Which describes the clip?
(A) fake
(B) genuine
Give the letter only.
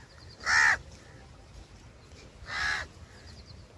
B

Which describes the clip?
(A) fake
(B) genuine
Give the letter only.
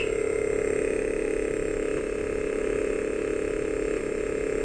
B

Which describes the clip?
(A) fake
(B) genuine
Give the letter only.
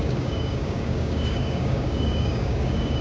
A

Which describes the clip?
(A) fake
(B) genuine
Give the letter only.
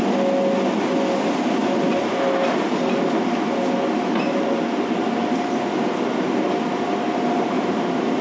B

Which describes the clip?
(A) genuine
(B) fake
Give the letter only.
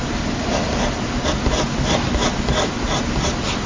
A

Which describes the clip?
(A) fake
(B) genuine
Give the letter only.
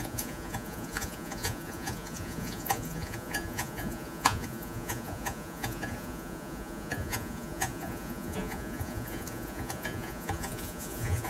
A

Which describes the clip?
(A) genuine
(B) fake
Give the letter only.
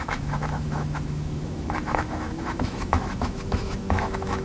B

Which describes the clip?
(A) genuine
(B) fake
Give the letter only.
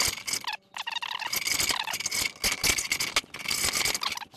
A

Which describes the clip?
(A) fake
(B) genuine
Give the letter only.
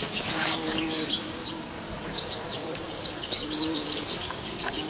A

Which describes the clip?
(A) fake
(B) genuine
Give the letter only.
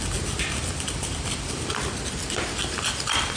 B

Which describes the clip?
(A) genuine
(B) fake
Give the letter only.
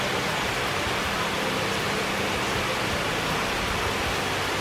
A